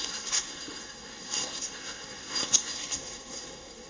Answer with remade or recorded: remade